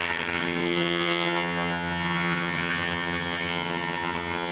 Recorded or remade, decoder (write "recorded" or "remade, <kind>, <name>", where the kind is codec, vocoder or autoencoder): remade, vocoder, HiFi-GAN